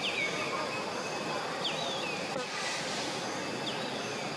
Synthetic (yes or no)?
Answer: no